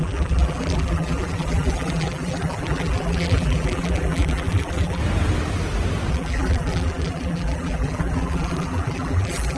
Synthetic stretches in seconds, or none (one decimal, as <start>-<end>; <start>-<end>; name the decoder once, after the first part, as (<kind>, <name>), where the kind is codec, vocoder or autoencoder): 0.0-5.0 (vocoder, BigVGAN v2); 6.1-9.6